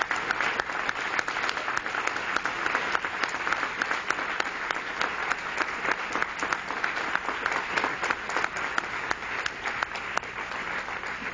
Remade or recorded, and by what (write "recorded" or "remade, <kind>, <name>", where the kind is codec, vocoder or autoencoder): recorded